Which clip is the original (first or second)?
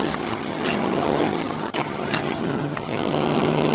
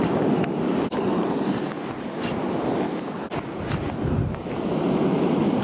second